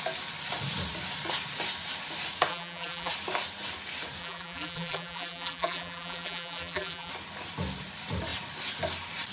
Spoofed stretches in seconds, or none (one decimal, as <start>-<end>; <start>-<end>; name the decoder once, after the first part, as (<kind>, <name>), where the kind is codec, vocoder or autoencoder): 2.5-3.1 (vocoder, BigVGAN v2); 4.2-7.1